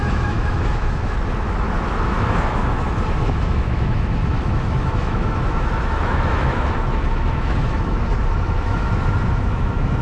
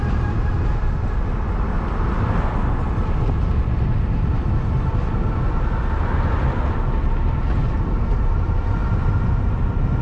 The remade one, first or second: first